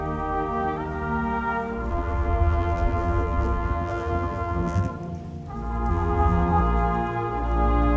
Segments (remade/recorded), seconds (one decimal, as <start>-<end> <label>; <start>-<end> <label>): 0.0-1.9 recorded; 1.9-4.9 remade; 4.9-5.9 recorded; 5.9-6.6 remade; 6.6-8.0 recorded